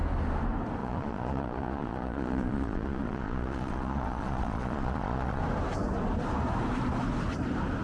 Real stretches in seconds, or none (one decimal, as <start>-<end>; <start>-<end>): 0.0-0.8; 5.4-7.8